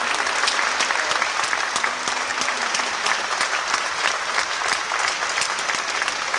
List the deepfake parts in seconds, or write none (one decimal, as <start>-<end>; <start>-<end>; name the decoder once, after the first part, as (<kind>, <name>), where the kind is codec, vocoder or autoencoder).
2.3-6.4 (vocoder, BigVGAN v2)